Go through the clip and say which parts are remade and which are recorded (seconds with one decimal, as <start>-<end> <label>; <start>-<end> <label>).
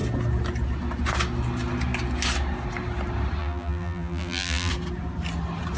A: 0.0-3.4 recorded; 3.4-4.7 remade; 4.7-5.8 recorded